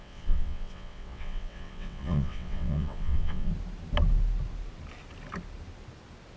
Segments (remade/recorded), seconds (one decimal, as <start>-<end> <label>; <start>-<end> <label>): 0.0-3.5 remade; 3.5-6.4 recorded